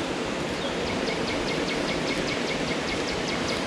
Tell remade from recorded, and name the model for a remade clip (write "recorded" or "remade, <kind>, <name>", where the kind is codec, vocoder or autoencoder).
recorded